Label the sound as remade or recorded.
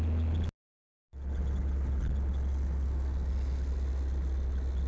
recorded